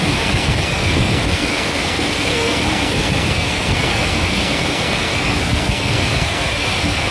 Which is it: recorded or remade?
remade